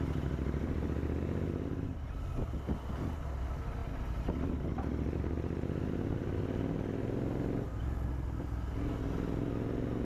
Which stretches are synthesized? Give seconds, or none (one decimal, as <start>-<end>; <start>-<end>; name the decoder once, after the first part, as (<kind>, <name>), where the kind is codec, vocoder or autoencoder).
none

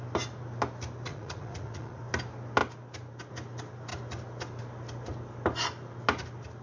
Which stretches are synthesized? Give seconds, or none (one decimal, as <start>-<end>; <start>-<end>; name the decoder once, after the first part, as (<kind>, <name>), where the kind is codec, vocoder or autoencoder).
1.1-2.0 (vocoder, Vocos)

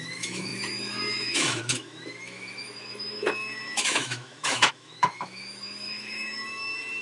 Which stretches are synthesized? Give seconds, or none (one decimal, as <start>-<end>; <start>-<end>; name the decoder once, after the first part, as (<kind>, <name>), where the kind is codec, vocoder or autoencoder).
0.0-7.0 (autoencoder, DAC-VAE)

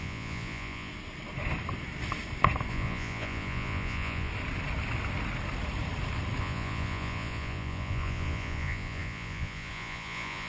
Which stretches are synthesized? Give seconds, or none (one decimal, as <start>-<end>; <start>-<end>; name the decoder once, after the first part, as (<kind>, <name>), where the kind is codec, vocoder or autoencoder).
0.0-0.9 (vocoder, Vocos); 2.7-4.3; 6.4-10.5

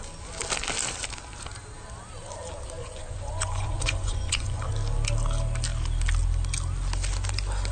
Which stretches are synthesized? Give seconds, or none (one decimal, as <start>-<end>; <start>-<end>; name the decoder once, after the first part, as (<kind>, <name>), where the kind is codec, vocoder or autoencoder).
2.8-4.7 (vocoder, Vocos)

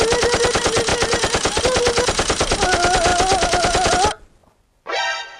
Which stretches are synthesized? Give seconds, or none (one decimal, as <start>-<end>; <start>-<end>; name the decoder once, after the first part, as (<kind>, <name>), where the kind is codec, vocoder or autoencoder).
4.4-5.4 (vocoder, Vocos)

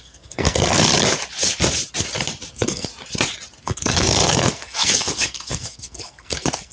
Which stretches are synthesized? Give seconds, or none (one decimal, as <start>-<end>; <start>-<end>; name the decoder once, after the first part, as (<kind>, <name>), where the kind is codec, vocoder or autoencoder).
0.0-0.9 (codec, SNAC); 2.5-2.9; 3.6-6.7

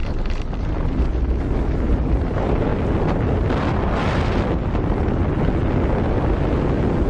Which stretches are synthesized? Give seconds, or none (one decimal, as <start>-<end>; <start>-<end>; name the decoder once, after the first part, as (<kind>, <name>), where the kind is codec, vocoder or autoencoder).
1.7-2.7 (vocoder, BigVGAN v2)